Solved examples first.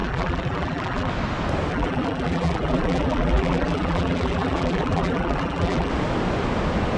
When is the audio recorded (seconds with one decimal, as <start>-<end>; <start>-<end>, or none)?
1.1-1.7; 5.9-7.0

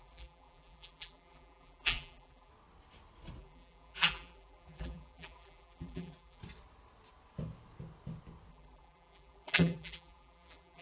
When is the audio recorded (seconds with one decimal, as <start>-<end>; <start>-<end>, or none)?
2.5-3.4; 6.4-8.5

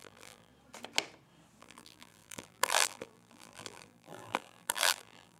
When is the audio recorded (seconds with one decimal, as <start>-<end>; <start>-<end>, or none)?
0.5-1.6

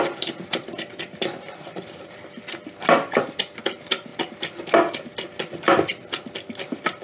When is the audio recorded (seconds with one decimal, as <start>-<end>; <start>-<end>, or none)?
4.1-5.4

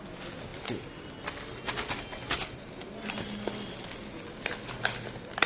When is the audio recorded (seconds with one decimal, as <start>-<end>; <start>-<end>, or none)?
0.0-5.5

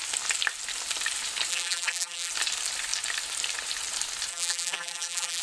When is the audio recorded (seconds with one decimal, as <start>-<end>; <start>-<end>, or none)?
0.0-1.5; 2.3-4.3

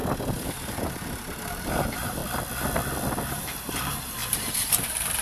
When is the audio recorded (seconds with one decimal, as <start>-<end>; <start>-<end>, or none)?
0.0-0.7; 2.2-3.3

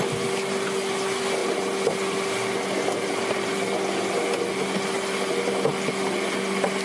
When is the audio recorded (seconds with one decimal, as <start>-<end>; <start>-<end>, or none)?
0.0-6.8